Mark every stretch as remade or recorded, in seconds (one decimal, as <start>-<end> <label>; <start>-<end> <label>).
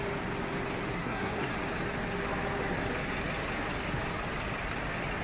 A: 0.0-0.9 recorded; 0.9-1.5 remade; 1.5-5.2 recorded